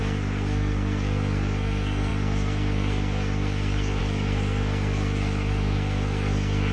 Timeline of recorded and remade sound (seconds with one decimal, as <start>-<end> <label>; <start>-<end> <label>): 0.0-6.7 remade

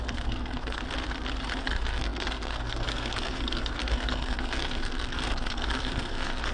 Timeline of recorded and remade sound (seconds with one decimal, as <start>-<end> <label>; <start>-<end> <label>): 0.0-0.8 remade; 0.8-1.6 recorded; 1.6-6.5 remade

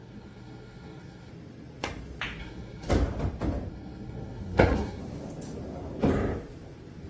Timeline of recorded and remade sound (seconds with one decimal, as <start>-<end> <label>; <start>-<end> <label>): 0.0-1.3 remade; 1.3-2.4 recorded; 2.4-2.9 remade; 2.9-3.7 recorded; 3.7-5.0 remade; 5.0-7.1 recorded

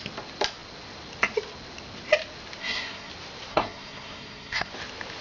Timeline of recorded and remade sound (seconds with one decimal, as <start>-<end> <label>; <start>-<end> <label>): 0.0-2.6 recorded; 2.6-3.1 remade; 3.1-3.5 recorded; 3.5-4.7 remade; 4.7-5.2 recorded

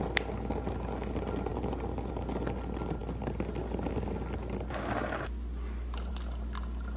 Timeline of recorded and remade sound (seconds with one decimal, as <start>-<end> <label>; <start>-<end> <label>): 0.0-7.0 recorded

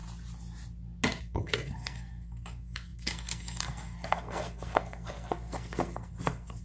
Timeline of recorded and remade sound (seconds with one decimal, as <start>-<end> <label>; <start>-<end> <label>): 0.0-1.2 recorded; 1.2-6.6 remade